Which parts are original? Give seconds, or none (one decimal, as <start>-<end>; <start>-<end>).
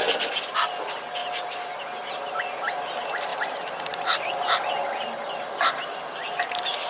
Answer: 0.0-6.9